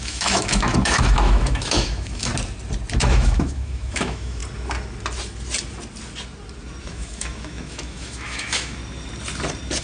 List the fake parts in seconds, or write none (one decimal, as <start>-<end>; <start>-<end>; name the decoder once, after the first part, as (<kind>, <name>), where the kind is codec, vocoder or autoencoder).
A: 0.0-2.3 (autoencoder, DAC-VAE); 3.0-4.4; 6.8-8.8